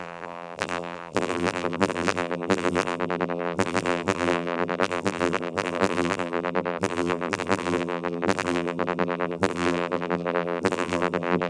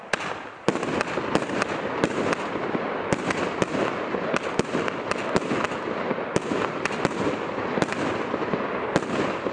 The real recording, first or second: second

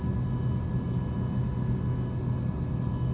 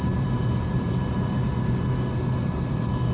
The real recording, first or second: first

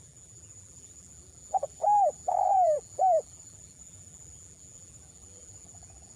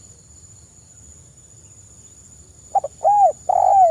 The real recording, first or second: second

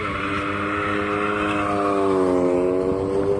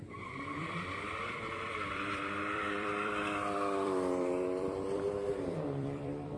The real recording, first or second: first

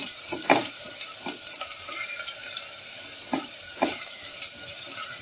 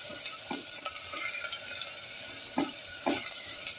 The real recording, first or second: second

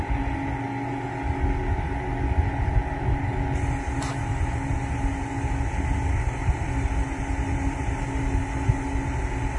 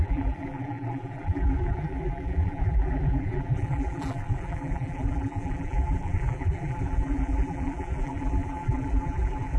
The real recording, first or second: first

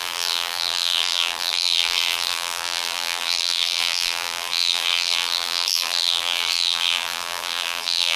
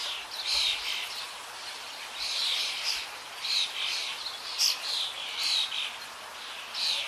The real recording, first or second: second